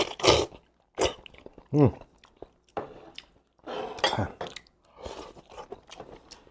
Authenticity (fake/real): real